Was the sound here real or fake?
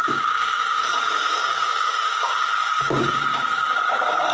fake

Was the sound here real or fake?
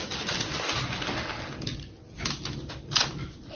real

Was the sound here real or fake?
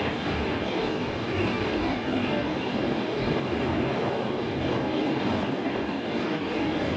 fake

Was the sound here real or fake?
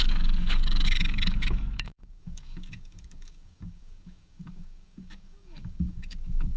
fake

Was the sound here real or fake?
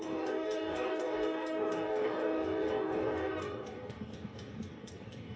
fake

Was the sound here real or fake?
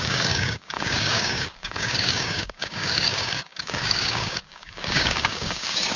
fake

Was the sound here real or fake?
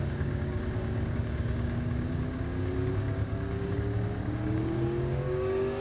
fake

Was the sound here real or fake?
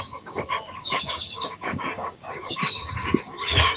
fake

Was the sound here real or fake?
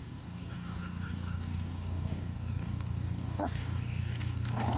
fake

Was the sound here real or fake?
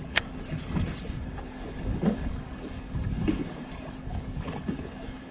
fake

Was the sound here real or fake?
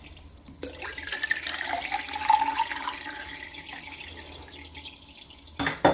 real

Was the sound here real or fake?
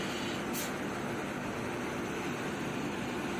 real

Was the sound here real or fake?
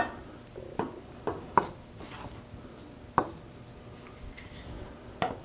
real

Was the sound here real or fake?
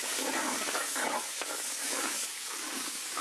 fake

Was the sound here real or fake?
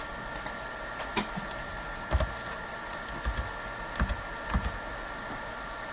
real